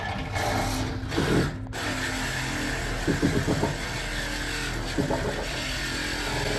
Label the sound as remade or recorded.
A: recorded